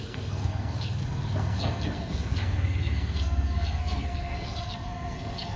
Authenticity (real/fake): fake